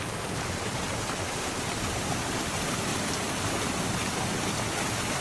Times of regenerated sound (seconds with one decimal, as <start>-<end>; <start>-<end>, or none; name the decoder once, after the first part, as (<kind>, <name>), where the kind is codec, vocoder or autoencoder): none